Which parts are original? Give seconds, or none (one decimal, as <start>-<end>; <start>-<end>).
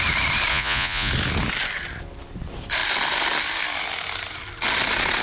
0.0-0.5; 1.1-5.2